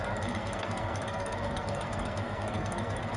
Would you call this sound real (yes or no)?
no